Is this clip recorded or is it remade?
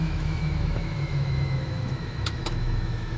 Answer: remade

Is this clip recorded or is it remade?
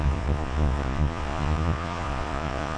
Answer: remade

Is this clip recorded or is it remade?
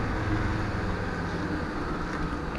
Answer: recorded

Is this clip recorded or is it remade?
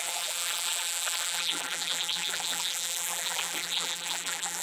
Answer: remade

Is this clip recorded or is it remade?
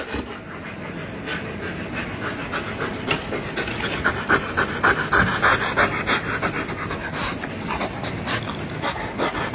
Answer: recorded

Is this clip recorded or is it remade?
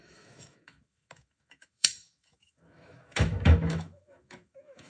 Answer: remade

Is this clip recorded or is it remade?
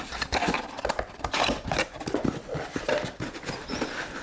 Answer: recorded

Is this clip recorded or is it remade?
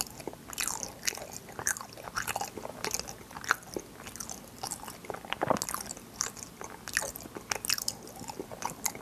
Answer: recorded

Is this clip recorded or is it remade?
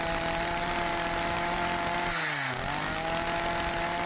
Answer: recorded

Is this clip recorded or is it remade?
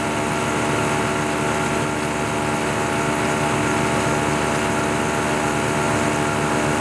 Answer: recorded